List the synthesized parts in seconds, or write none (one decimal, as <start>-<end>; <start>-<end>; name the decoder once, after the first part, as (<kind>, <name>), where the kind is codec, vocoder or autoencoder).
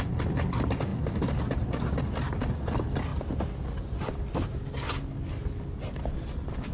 none